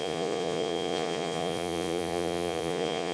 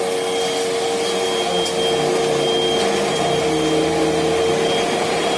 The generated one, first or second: first